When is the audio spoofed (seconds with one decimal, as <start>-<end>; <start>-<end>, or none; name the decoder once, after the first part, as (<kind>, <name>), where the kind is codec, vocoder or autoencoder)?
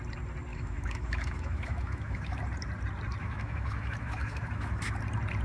0.5-2.4 (autoencoder, DAC-VAE); 3.2-4.8